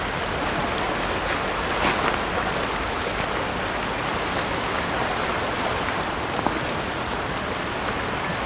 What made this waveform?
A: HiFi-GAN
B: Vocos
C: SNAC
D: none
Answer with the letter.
D